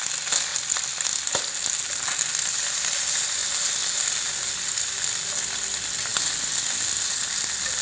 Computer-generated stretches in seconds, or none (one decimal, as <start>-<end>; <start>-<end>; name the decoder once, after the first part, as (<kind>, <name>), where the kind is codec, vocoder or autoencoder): none

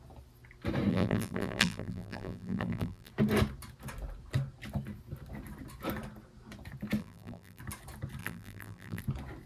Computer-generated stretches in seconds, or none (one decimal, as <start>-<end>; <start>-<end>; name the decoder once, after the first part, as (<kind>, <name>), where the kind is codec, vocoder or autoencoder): 0.9-3.1 (vocoder, BigVGAN v2); 7.0-7.6; 8.2-9.0